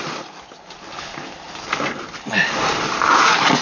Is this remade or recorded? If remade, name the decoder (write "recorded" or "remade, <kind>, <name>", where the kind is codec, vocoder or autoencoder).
recorded